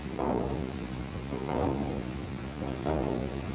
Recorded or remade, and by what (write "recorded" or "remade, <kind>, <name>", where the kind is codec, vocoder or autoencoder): remade, vocoder, Vocos